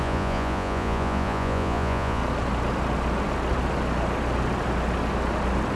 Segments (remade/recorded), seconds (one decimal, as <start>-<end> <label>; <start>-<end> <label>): 0.0-2.2 remade; 2.2-5.8 recorded